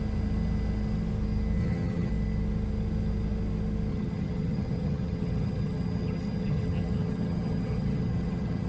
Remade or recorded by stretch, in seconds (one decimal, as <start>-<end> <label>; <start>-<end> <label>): 0.0-1.6 recorded; 1.6-2.1 remade; 2.1-3.9 recorded; 3.9-8.7 remade